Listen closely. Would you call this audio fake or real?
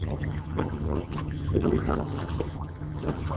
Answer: fake